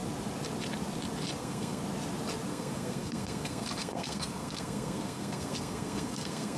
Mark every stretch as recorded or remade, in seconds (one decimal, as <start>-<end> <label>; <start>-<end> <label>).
0.0-1.4 recorded; 1.4-1.8 remade; 1.8-2.5 recorded; 2.5-6.6 remade